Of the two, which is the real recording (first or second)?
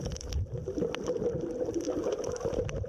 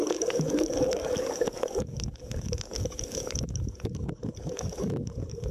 first